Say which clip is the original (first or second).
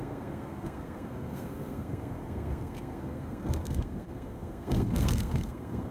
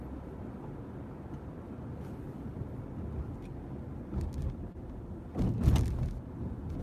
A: second